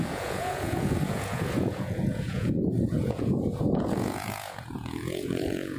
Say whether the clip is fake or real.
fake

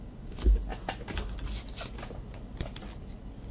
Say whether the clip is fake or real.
real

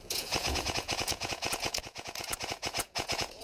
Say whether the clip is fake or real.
fake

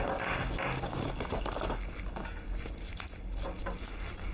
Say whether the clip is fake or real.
real